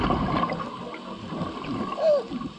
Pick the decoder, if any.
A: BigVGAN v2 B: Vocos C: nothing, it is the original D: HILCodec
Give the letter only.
C